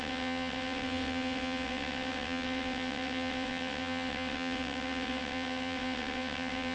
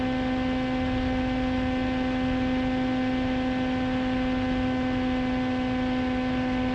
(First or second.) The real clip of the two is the second